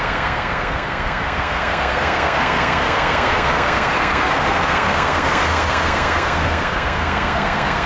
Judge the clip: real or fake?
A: fake